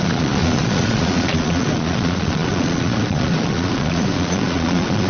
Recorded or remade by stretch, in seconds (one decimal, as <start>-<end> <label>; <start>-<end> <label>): 0.0-5.1 remade